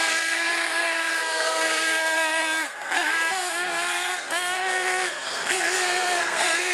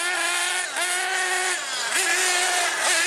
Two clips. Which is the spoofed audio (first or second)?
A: first